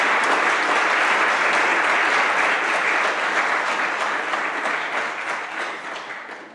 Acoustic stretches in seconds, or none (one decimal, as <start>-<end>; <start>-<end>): 0.0-6.5